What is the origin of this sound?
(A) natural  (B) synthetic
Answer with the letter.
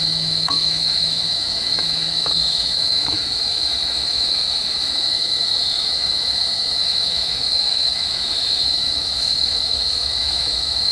B